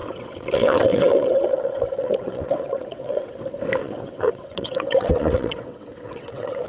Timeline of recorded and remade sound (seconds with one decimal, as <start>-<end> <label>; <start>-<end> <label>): 0.0-3.4 remade; 3.4-3.8 recorded; 3.8-6.7 remade